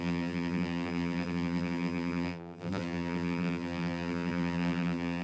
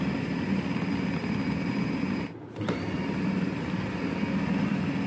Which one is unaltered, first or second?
second